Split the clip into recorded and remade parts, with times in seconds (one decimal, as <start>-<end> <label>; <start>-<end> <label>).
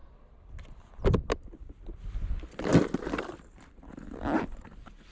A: 0.0-5.1 recorded